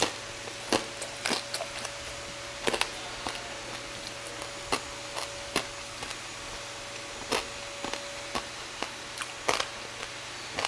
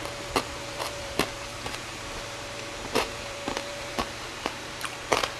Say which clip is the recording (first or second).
first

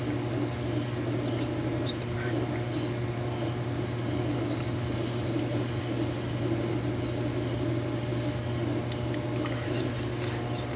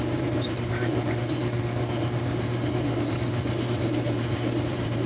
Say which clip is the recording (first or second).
first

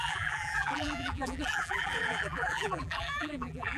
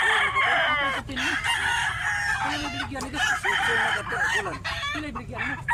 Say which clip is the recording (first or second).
second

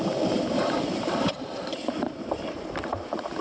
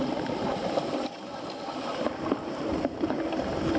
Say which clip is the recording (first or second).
second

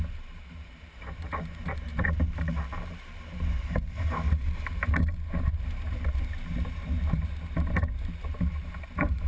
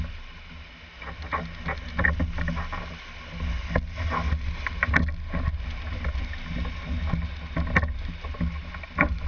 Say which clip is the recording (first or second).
second